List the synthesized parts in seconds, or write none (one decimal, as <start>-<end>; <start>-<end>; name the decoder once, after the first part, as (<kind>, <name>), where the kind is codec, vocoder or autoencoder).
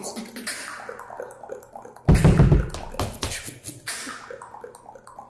none